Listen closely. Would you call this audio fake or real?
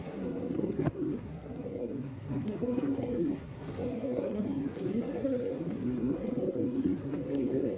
fake